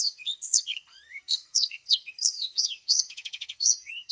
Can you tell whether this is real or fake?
fake